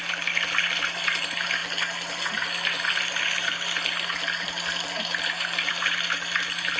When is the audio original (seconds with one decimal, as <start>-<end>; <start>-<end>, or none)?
0.0-6.8